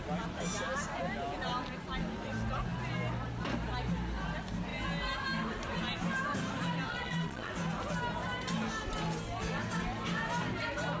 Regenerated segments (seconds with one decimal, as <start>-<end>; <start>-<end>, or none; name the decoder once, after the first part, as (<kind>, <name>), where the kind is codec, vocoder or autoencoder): 6.9-7.5 (vocoder, Vocos)